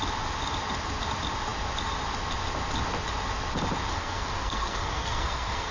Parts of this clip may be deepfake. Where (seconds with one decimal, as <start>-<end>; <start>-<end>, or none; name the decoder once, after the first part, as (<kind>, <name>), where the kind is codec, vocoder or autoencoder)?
3.9-5.7 (codec, SNAC)